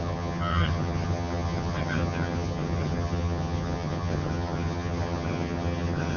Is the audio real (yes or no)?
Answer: no